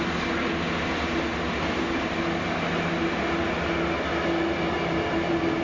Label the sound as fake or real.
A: real